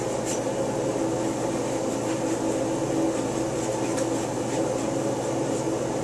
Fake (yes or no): no